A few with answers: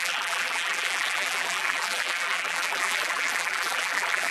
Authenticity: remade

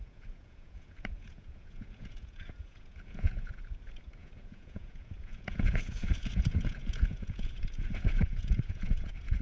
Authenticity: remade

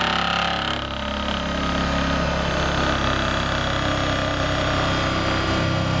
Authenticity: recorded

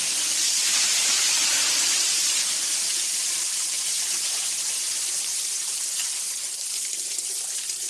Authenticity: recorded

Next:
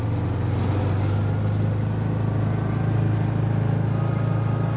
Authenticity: recorded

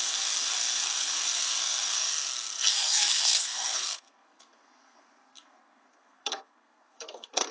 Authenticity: remade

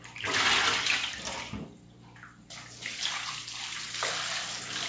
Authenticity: recorded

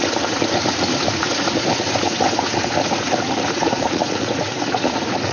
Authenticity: remade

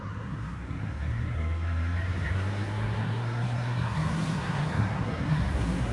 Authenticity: remade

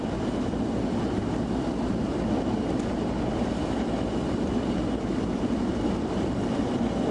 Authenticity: remade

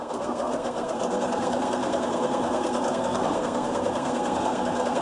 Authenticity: remade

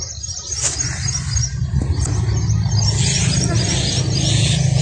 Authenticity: recorded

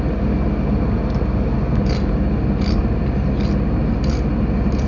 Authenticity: recorded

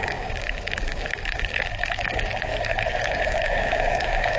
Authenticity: remade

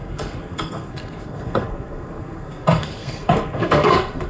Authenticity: remade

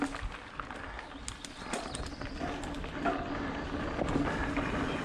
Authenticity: recorded